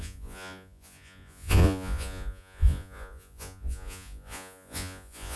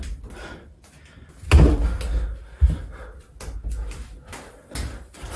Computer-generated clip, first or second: first